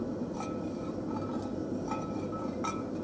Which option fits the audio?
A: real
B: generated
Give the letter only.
A